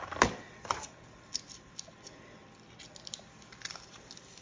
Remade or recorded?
recorded